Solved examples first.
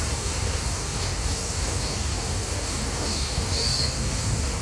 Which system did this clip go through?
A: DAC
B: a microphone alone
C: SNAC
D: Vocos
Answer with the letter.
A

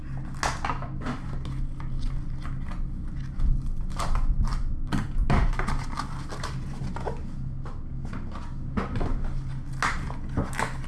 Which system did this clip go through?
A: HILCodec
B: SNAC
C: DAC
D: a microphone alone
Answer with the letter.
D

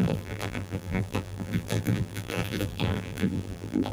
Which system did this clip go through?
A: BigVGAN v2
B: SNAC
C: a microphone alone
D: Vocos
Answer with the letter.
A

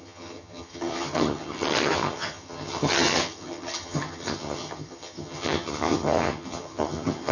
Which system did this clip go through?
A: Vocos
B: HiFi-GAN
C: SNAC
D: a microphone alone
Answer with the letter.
B